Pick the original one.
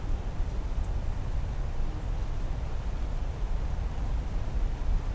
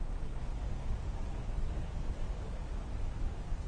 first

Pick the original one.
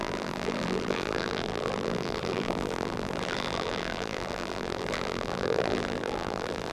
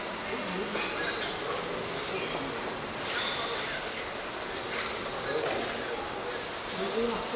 second